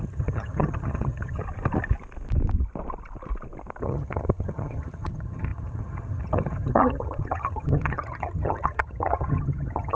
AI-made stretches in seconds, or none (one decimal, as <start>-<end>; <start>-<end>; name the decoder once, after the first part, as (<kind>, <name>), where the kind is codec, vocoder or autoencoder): 0.0-1.4 (vocoder, HiFi-GAN); 3.8-9.9